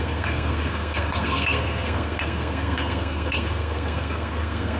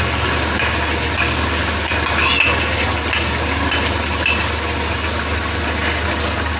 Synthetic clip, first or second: first